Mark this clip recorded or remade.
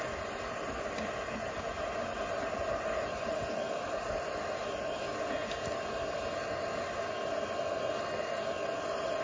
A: recorded